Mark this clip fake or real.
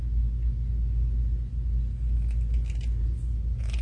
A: real